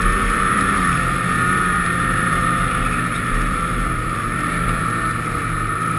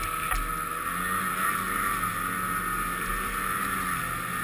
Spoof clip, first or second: first